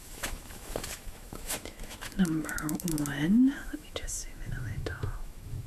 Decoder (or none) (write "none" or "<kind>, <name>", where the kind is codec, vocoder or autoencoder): autoencoder, DAC-VAE